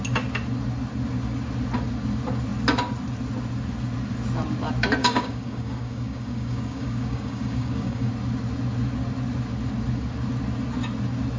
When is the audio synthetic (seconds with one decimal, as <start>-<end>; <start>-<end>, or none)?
5.0-8.1